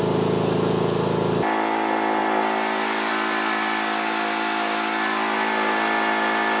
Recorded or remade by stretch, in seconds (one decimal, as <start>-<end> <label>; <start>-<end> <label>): 0.0-6.6 recorded